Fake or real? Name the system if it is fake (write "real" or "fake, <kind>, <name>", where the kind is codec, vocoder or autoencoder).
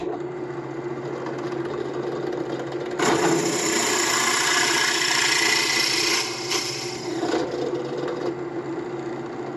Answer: real